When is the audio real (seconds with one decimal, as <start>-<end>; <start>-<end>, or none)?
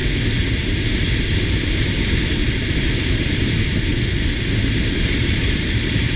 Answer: 0.0-0.5; 2.4-3.0; 3.9-5.0